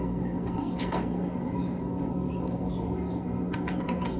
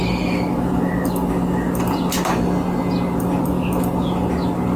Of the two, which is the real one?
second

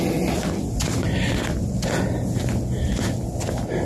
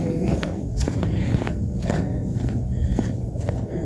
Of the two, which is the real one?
first